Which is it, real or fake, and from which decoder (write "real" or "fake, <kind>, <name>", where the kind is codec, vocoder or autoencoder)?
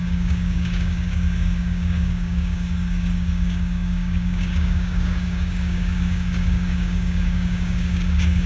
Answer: fake, codec, DAC